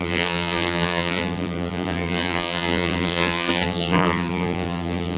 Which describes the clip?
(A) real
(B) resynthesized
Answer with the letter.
B